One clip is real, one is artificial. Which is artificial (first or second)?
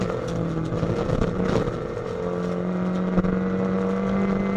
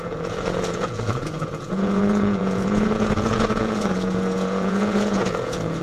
second